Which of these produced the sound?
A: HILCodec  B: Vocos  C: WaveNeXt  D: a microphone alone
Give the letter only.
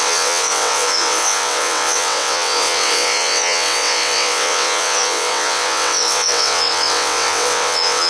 C